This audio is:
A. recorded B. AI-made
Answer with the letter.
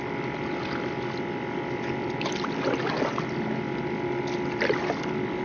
A